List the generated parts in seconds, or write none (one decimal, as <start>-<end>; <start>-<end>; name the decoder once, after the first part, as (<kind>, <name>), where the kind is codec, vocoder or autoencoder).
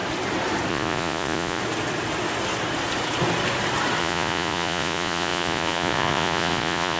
0.7-1.6 (vocoder, Vocos); 4.0-7.0